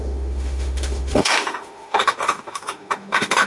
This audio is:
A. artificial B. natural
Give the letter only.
A